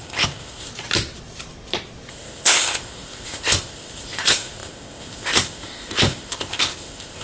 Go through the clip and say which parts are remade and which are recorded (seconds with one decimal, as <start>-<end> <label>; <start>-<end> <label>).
0.0-0.7 remade; 0.7-2.1 recorded; 2.1-7.2 remade